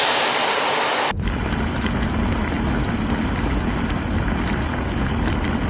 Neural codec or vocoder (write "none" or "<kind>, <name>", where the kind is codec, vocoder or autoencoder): none